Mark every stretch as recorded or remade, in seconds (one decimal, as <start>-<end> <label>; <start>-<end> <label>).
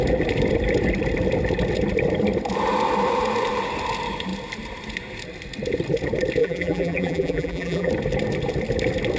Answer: 0.0-6.4 recorded; 6.4-7.9 remade; 7.9-9.2 recorded